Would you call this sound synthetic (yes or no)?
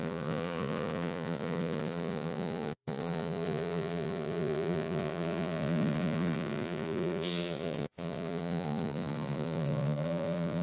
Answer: yes